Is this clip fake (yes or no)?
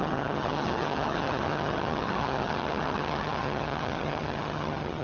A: yes